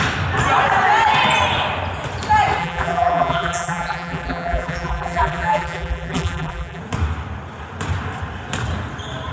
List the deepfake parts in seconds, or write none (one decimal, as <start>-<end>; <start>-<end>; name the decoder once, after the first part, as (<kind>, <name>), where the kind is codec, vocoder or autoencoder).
2.6-6.8 (vocoder, BigVGAN v2)